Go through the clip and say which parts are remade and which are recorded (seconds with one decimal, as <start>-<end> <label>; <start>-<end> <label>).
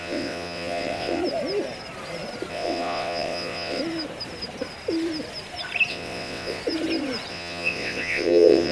0.0-1.2 remade; 1.2-2.5 recorded; 2.5-3.8 remade; 3.8-5.9 recorded; 5.9-6.6 remade; 6.6-7.3 recorded; 7.3-8.7 remade